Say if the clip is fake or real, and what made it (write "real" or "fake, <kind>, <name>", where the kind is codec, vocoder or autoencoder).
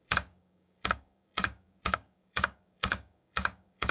fake, codec, DAC